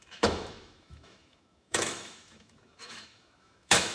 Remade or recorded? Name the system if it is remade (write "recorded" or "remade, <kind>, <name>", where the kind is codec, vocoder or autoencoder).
remade, autoencoder, DAC-VAE